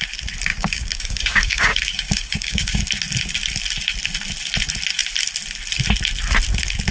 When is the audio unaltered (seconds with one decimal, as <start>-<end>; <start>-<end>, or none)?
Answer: 0.0-0.5; 2.8-6.9